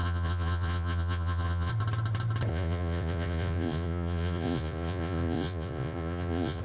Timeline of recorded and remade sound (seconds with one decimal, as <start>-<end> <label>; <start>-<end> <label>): 0.0-1.7 remade; 1.7-2.5 recorded; 2.5-6.6 remade

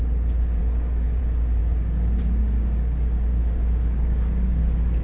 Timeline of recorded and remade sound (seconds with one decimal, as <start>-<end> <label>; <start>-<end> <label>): 0.0-0.6 recorded; 0.6-1.2 remade; 1.2-1.6 recorded; 1.6-4.6 remade; 4.6-5.0 recorded

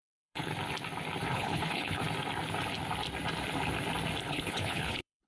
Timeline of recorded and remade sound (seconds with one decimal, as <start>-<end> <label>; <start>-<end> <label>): 0.0-0.5 remade; 0.5-1.3 recorded; 1.3-2.0 remade; 2.0-4.2 recorded; 4.2-5.3 remade

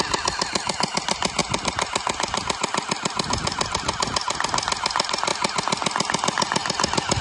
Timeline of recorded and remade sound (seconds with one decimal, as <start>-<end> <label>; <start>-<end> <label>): 0.0-7.2 recorded

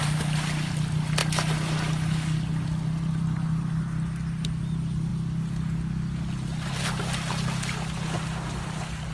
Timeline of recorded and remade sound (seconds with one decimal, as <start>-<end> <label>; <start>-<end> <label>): 0.0-9.1 recorded

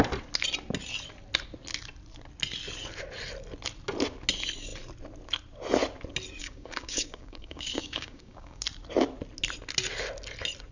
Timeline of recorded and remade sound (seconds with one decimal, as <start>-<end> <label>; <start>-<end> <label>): 0.0-6.4 recorded; 6.4-8.6 remade; 8.6-10.7 recorded